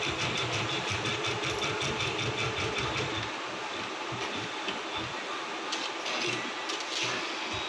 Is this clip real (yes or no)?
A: yes